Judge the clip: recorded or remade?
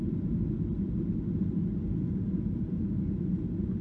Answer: recorded